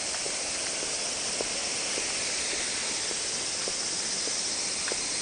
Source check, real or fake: real